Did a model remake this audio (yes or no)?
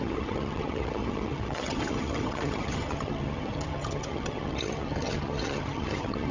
yes